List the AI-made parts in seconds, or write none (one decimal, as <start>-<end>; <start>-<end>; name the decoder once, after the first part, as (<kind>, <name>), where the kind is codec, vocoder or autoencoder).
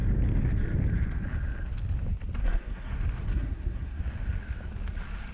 2.4-2.9 (codec, SNAC); 3.3-4.0